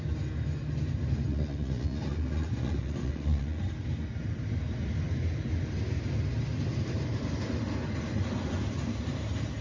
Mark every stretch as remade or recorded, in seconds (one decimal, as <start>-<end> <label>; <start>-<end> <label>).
0.0-1.3 recorded; 1.3-3.6 remade; 3.6-9.6 recorded